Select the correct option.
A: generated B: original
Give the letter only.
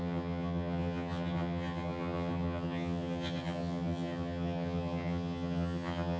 A